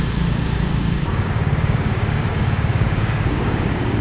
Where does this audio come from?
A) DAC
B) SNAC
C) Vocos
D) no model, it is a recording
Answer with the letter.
A